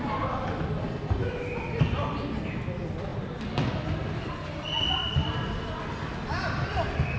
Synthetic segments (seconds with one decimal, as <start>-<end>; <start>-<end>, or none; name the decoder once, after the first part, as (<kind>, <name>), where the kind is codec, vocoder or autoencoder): none